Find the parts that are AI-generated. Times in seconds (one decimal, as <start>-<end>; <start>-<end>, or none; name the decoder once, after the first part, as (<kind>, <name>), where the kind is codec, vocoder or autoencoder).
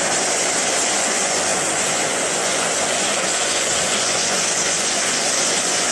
0.0-5.9 (vocoder, Vocos)